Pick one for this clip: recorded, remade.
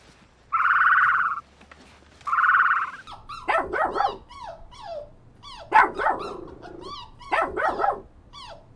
recorded